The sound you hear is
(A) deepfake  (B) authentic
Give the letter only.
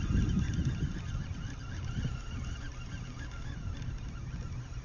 B